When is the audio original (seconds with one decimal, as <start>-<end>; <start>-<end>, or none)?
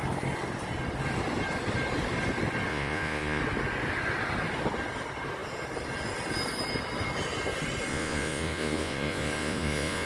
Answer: 0.0-2.7; 3.4-7.9